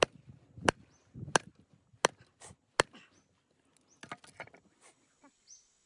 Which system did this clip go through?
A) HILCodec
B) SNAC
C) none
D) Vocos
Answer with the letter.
C